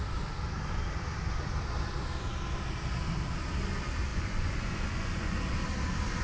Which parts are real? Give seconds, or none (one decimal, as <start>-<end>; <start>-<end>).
0.0-4.1; 5.4-6.2